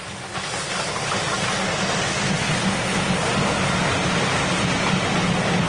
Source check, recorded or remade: recorded